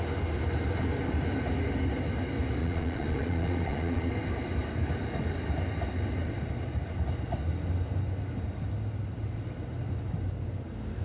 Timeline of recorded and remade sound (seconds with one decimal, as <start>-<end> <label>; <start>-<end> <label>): 0.0-2.6 recorded; 2.6-4.1 remade; 4.1-11.0 recorded